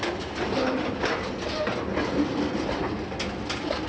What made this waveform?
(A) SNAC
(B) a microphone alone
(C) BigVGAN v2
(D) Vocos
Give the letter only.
B